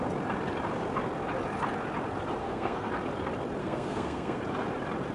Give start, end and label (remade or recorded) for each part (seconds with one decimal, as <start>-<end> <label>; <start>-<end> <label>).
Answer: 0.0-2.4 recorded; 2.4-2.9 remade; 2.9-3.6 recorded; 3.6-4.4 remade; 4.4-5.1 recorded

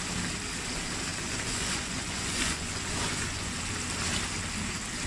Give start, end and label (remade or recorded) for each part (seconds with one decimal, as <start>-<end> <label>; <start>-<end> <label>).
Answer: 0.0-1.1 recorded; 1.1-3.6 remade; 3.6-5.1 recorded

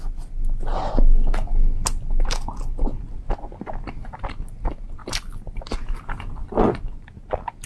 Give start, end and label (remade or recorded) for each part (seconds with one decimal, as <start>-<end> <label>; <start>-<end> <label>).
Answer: 0.0-5.0 recorded; 5.0-5.6 remade; 5.6-7.7 recorded